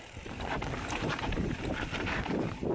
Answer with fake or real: fake